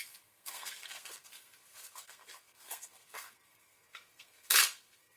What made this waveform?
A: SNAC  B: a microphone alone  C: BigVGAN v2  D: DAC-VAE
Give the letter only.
A